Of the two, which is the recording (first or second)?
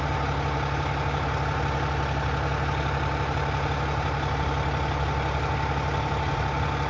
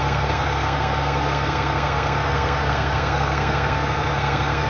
first